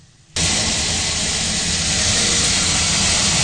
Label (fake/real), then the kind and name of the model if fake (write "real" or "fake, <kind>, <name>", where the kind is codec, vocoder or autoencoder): real